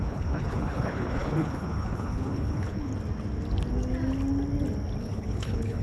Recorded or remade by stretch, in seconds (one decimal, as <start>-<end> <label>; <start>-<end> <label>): 0.0-2.9 remade; 2.9-5.0 recorded; 5.0-5.8 remade